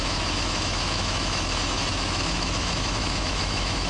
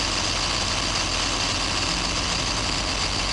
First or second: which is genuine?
second